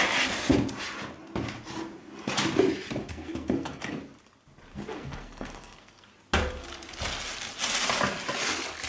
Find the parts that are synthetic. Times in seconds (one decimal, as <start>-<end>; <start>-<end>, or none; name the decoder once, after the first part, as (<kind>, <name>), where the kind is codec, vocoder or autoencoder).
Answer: 3.1-4.0 (codec, SNAC); 4.7-6.1